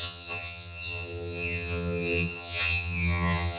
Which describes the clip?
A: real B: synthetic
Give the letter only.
B